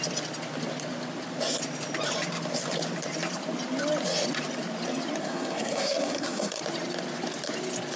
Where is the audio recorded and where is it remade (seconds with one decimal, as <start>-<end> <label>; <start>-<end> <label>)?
0.0-5.2 recorded; 5.2-6.6 remade; 6.6-8.0 recorded